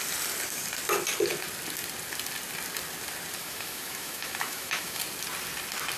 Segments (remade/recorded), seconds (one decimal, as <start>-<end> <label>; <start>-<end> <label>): 0.0-3.4 recorded; 3.4-5.0 remade; 5.0-6.0 recorded